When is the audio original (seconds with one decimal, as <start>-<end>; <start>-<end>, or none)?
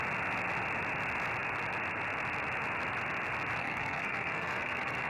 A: 0.0-3.6